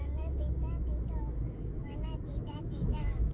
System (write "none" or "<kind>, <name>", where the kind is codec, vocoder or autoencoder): autoencoder, DAC-VAE